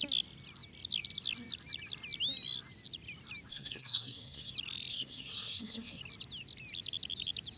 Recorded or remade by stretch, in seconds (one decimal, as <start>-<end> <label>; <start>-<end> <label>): 0.0-3.5 recorded; 3.5-4.5 remade; 4.5-4.9 recorded; 4.9-6.0 remade; 6.0-7.6 recorded